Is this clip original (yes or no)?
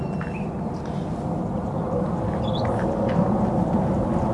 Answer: yes